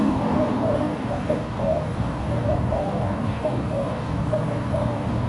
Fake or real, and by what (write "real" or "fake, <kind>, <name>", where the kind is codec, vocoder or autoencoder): fake, codec, DAC